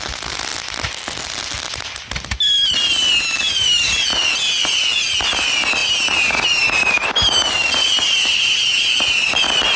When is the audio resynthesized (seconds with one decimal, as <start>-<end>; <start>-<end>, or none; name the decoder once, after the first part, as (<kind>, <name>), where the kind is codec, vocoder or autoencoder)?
5.8-9.4 (vocoder, BigVGAN v2)